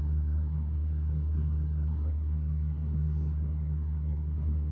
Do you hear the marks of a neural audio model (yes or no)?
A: yes